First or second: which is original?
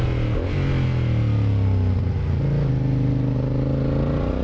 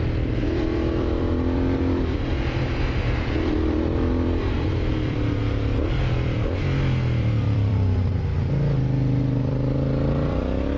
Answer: first